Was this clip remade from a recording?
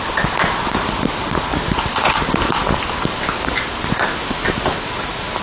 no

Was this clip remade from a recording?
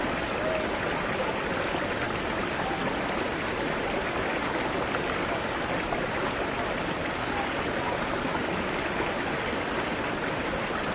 no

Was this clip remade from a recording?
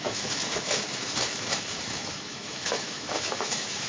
yes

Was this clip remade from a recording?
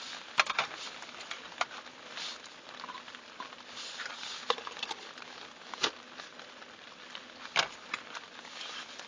no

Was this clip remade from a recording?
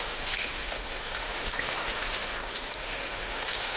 yes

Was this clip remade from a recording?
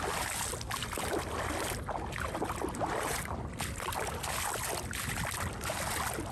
no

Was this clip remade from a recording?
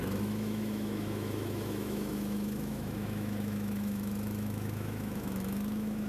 yes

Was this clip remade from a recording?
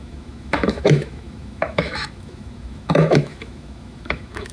yes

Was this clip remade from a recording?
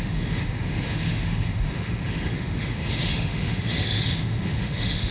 yes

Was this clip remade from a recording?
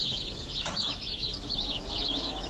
yes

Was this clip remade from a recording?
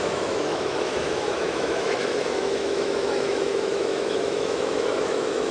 yes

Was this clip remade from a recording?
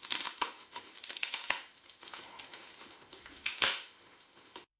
yes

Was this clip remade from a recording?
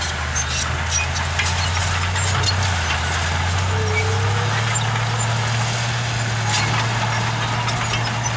no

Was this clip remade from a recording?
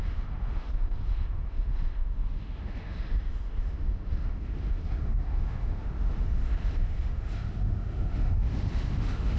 yes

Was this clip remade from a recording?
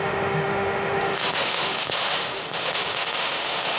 yes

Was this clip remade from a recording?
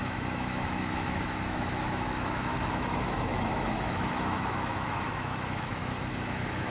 yes